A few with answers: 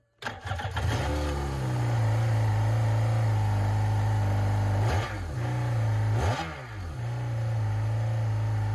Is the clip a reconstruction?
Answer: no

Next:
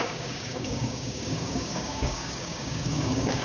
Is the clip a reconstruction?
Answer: yes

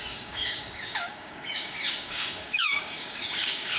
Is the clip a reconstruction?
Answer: yes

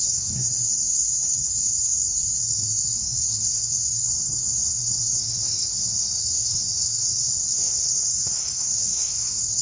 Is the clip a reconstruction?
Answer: yes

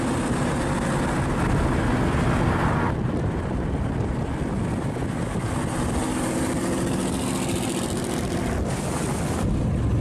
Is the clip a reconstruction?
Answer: no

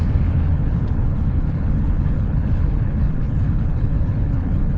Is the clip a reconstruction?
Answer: yes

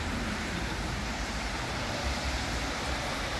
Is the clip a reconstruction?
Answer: yes